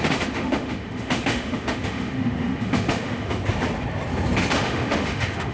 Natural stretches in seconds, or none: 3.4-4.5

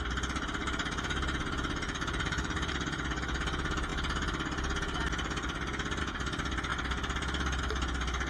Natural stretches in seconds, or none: 0.0-0.6; 3.2-8.3

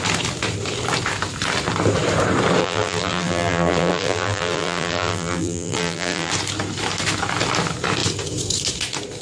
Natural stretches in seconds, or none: 0.0-2.6; 6.3-9.2